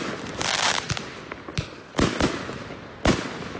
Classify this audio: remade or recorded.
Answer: recorded